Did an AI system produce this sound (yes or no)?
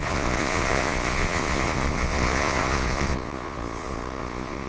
yes